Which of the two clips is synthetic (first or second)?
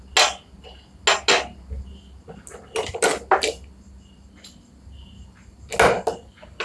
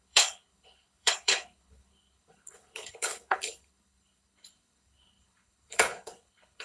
second